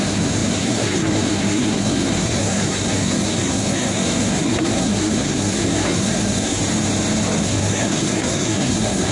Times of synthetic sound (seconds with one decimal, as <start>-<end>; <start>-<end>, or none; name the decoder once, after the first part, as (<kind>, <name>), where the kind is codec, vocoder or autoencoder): 0.0-6.6 (codec, SNAC); 7.4-9.1